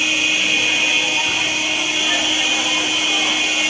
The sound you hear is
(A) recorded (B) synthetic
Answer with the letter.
A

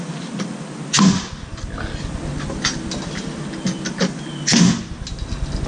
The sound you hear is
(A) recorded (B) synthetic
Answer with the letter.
A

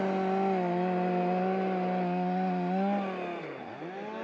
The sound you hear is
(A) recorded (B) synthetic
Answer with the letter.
A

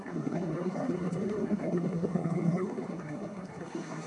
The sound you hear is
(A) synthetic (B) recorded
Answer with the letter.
A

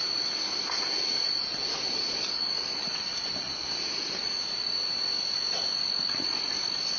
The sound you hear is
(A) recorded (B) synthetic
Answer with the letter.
A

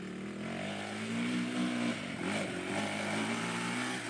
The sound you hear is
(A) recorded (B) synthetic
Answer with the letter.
A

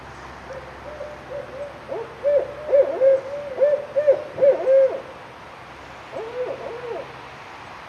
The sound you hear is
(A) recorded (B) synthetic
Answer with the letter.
A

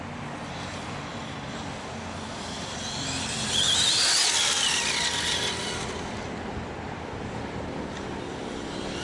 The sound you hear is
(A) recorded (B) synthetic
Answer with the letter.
B